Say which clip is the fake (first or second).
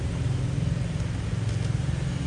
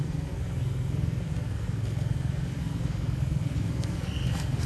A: second